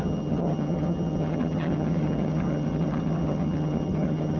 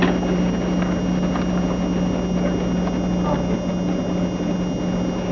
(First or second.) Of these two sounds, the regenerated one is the first